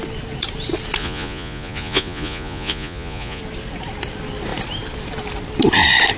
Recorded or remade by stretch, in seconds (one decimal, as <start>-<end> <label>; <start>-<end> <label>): 0.0-1.0 recorded; 1.0-3.4 remade; 3.4-6.2 recorded